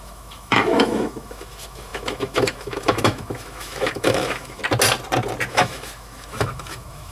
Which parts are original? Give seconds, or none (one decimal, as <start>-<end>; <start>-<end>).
4.6-5.5